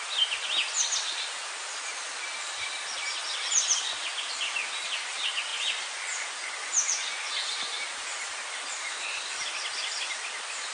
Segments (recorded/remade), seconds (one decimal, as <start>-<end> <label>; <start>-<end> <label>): 0.0-5.5 recorded; 5.5-7.3 remade; 7.3-10.7 recorded